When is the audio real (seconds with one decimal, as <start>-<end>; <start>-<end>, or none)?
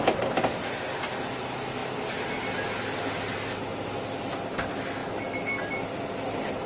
0.0-6.7